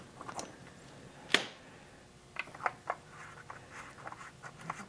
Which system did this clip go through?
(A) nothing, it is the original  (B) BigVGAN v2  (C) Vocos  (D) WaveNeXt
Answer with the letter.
A